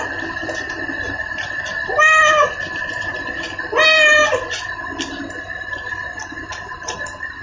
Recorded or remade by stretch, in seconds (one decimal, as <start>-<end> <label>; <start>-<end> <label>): 0.0-7.4 recorded